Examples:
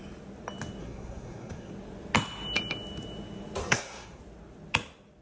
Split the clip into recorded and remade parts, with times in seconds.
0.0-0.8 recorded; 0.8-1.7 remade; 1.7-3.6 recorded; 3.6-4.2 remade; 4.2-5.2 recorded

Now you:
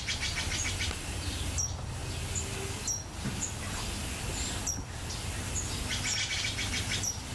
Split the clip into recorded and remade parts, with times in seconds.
0.0-7.3 recorded

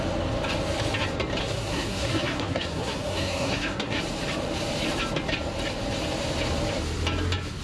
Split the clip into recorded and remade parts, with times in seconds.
0.0-1.4 recorded; 1.4-4.0 remade; 4.0-7.6 recorded

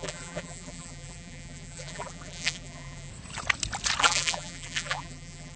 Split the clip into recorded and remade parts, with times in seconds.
0.0-3.1 remade; 3.1-4.0 recorded; 4.0-5.6 remade

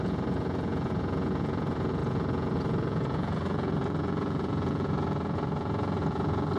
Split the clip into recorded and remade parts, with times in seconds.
0.0-6.6 remade